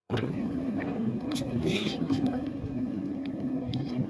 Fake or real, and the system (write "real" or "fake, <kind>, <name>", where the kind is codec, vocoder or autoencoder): fake, codec, SNAC